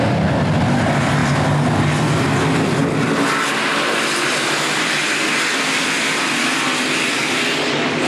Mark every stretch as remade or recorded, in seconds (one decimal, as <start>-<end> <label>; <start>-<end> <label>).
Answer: 0.0-8.1 recorded